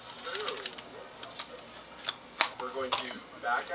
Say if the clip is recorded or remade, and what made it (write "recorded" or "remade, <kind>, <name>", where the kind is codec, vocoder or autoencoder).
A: recorded